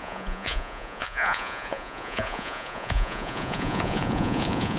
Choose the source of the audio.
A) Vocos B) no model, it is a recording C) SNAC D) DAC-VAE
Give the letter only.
A